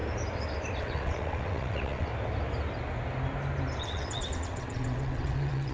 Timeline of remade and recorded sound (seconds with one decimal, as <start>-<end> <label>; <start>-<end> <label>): 0.0-0.8 recorded; 0.8-2.1 remade; 2.1-3.8 recorded; 3.8-5.7 remade